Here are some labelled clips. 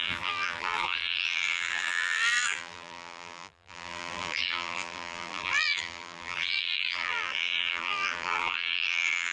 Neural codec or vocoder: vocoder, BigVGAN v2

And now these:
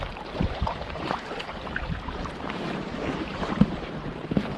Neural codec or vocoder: vocoder, BigVGAN v2